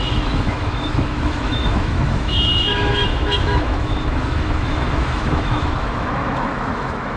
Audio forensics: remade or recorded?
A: remade